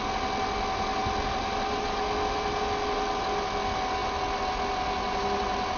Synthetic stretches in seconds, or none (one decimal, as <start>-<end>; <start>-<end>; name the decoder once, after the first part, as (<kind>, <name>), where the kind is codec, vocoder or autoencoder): none